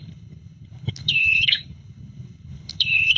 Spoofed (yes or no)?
yes